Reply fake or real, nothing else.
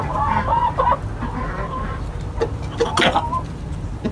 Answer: real